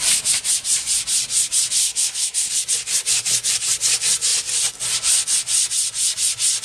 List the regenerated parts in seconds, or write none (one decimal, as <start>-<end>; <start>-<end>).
1.8-2.5